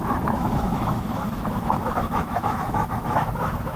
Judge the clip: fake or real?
fake